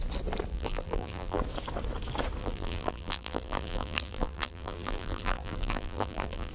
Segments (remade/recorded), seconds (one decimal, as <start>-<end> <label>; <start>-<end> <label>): 0.0-0.5 recorded; 0.5-1.4 remade; 1.4-2.4 recorded; 2.4-6.5 remade